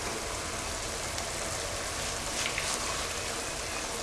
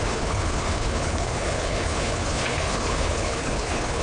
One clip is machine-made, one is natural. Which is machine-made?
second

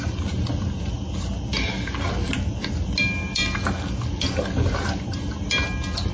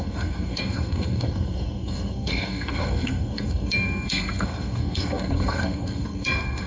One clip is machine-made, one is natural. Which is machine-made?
second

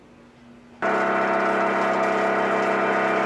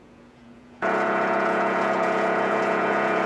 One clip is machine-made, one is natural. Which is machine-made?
second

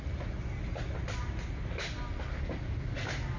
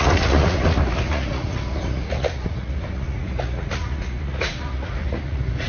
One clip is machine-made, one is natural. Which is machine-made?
second